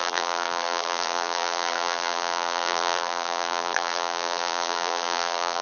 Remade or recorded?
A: remade